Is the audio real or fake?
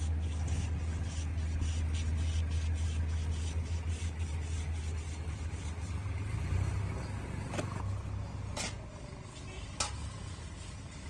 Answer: real